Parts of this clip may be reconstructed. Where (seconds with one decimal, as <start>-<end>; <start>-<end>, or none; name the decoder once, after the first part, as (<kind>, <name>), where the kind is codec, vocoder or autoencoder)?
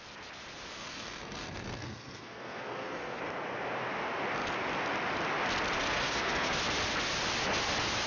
0.7-3.2 (codec, SNAC); 5.8-6.5